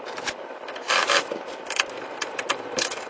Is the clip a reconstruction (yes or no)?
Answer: yes